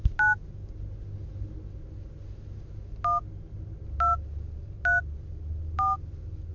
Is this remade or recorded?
recorded